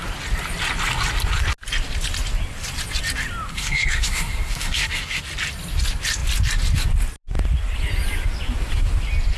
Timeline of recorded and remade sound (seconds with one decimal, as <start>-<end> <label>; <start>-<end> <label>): 0.0-3.5 recorded; 3.5-5.2 remade; 5.2-9.4 recorded